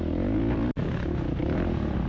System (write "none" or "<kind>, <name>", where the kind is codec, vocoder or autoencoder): none